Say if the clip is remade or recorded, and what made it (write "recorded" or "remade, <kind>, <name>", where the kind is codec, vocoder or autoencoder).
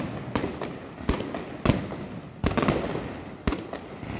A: recorded